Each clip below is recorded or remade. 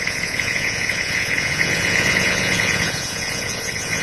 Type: remade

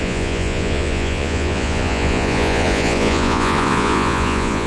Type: remade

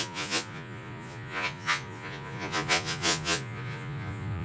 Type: remade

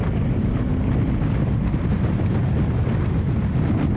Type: recorded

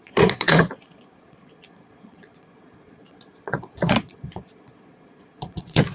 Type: remade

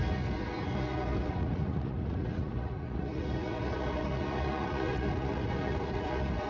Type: remade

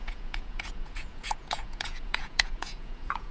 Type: remade